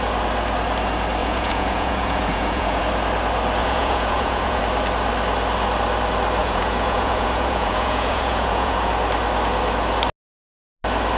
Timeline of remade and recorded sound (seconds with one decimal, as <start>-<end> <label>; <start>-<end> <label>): 0.0-1.2 recorded; 1.2-2.8 remade; 2.8-3.6 recorded; 3.6-4.6 remade; 4.6-6.4 recorded; 6.4-8.9 remade; 8.9-11.2 recorded